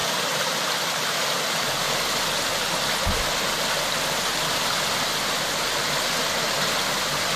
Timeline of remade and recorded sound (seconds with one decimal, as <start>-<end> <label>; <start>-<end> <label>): 0.0-7.4 recorded